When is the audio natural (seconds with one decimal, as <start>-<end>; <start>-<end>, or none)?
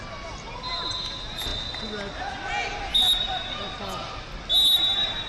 0.0-5.3